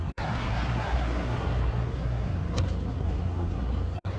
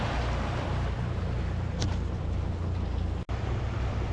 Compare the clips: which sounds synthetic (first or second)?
first